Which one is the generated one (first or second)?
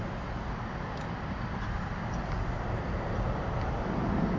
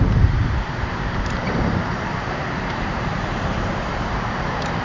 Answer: second